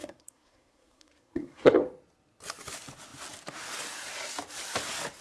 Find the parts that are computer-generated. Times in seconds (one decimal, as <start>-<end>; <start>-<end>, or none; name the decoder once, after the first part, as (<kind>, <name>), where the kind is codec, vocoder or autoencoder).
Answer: 0.0-1.8 (codec, SNAC)